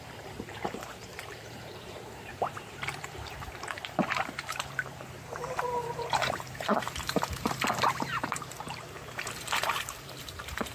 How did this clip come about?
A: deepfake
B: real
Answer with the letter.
A